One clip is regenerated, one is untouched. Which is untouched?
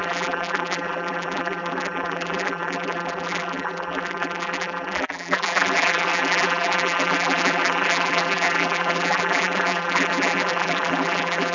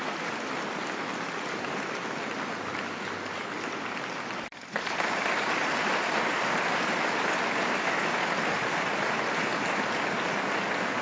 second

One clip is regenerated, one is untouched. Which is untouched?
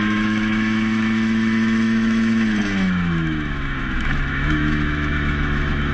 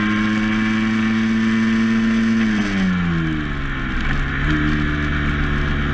second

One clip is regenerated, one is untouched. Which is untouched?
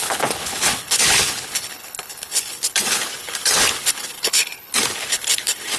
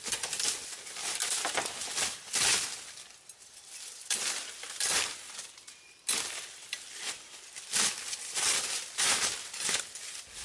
second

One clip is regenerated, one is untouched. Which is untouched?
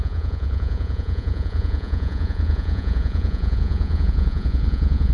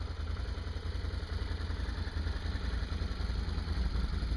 second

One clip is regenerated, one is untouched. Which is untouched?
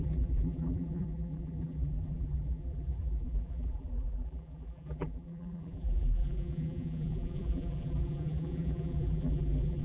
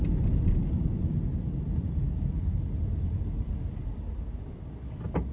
second